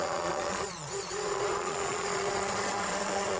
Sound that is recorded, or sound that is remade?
remade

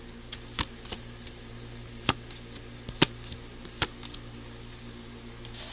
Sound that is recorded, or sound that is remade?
recorded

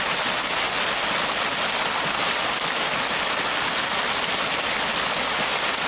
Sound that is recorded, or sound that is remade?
recorded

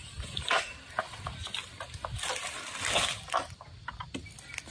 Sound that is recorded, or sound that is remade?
recorded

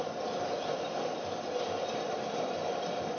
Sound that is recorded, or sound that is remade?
recorded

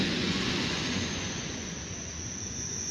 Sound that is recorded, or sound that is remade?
remade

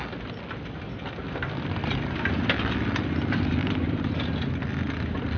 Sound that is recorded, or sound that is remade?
recorded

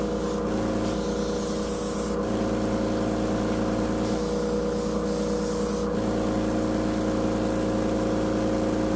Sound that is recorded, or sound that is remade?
recorded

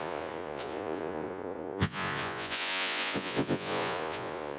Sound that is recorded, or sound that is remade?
remade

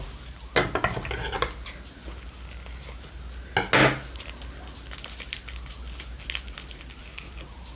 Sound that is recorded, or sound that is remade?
recorded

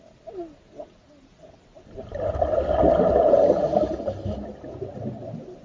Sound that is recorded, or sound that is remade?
recorded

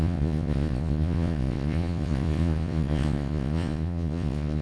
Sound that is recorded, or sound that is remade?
remade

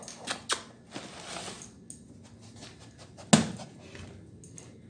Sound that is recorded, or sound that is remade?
recorded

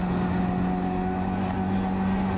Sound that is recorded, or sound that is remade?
recorded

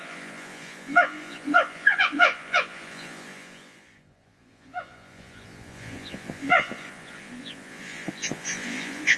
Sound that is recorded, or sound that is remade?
remade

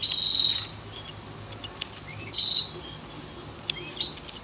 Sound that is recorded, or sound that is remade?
recorded